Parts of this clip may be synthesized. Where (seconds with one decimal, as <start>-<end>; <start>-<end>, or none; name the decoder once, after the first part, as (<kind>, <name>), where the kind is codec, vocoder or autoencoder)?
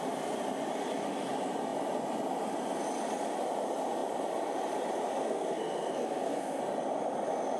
5.2-6.6 (codec, SNAC)